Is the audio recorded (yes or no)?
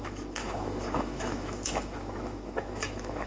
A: no